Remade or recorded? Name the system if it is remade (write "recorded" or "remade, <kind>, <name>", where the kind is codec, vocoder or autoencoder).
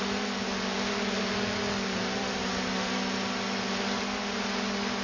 recorded